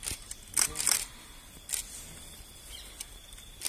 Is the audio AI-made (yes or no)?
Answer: no